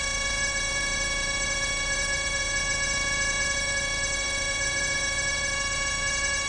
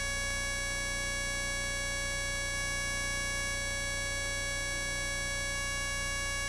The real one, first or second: second